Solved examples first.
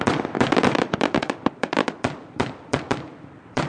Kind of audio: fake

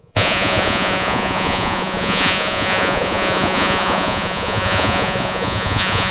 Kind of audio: fake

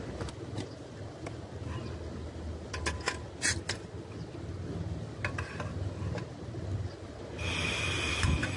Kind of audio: real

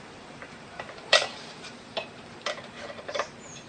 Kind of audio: fake